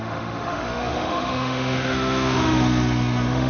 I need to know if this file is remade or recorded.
remade